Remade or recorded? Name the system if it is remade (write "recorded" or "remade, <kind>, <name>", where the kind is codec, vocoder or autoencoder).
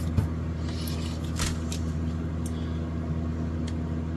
recorded